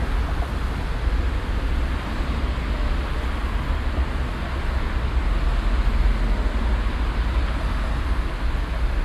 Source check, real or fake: real